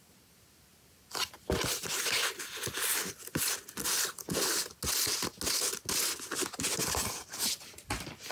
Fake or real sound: real